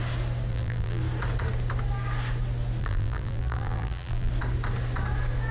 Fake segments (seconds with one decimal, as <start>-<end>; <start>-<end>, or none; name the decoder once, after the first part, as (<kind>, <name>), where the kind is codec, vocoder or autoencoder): 0.5-1.0 (vocoder, BigVGAN v2); 2.8-4.3